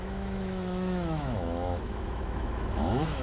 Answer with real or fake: fake